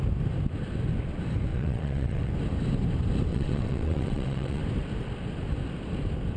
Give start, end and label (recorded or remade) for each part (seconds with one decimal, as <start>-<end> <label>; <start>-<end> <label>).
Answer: 0.0-1.5 recorded; 1.5-2.3 remade; 2.3-3.3 recorded; 3.3-4.6 remade; 4.6-6.4 recorded